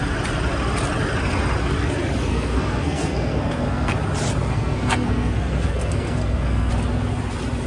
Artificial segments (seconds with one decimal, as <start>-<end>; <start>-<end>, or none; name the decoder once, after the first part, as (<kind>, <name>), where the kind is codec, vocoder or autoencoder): 2.3-3.9 (codec, SNAC); 4.5-6.7